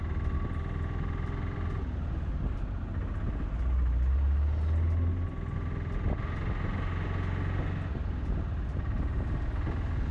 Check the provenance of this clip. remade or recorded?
recorded